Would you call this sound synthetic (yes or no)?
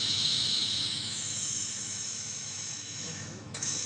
yes